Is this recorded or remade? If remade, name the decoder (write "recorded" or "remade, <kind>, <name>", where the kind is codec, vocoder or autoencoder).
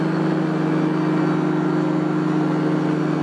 recorded